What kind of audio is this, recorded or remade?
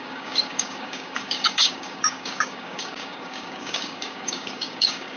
remade